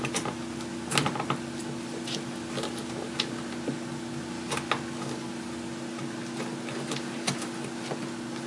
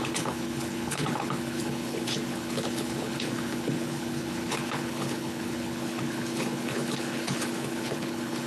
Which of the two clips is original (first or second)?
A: first